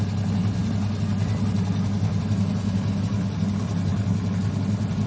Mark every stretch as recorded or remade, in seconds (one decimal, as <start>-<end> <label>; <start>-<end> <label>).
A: 0.0-5.1 recorded